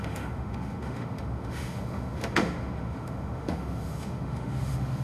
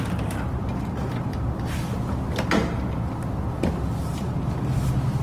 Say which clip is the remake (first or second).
first